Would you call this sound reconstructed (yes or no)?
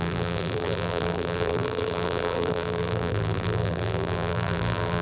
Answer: yes